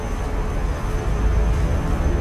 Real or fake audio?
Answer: real